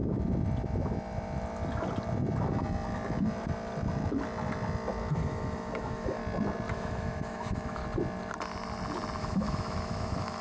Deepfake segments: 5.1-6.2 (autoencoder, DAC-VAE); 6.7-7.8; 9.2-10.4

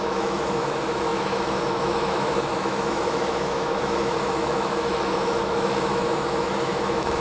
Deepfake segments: 0.0-7.2 (autoencoder, DAC-VAE)

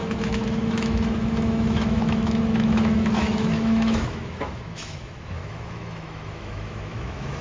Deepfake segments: 0.0-7.4 (autoencoder, DAC-VAE)

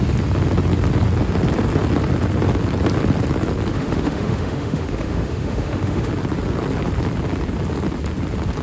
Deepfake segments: 3.7-6.1 (autoencoder, DAC-VAE)

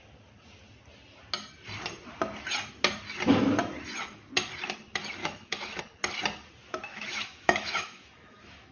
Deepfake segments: 5.2-5.8 (autoencoder, DAC-VAE); 6.9-8.7

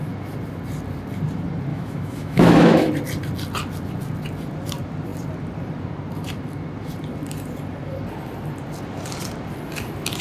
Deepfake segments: 1.7-2.9 (autoencoder, DAC-VAE)

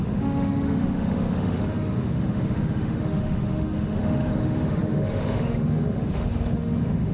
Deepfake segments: 0.0-7.1 (autoencoder, DAC-VAE)

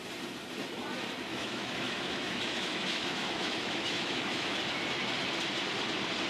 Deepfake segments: 1.3-4.6 (autoencoder, DAC-VAE)